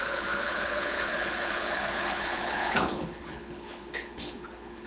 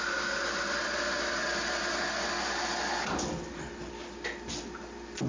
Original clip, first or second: second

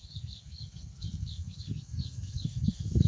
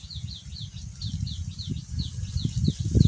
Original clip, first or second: second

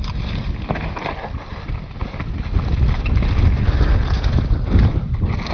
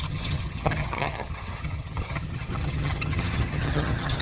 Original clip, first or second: first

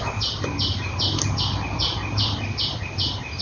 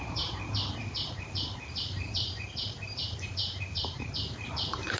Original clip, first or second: first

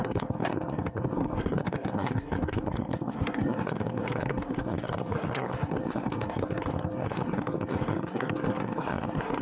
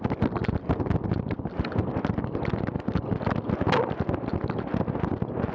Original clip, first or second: second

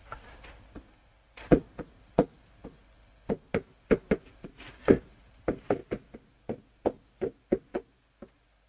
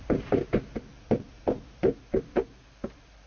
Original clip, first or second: first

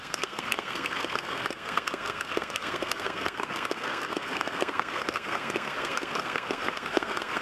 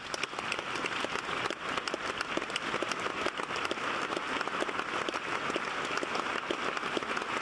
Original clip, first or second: second